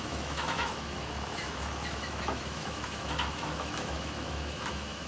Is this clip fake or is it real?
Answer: fake